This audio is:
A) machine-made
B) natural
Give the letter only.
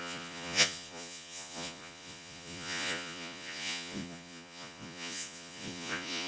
A